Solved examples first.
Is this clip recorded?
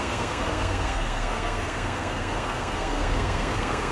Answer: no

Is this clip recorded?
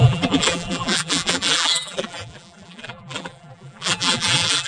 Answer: no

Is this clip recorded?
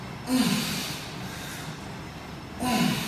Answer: yes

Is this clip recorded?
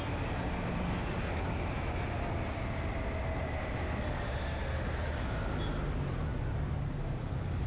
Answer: yes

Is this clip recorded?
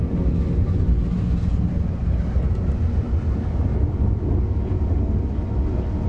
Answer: yes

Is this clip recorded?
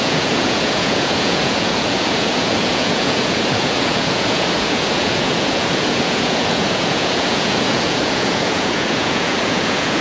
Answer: no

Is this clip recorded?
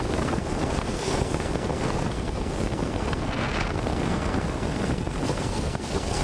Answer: no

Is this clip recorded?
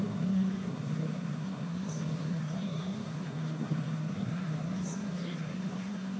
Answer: no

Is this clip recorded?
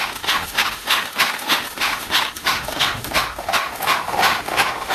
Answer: no